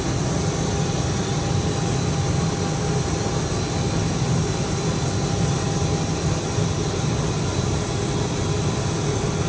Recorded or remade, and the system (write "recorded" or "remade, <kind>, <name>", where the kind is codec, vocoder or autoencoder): recorded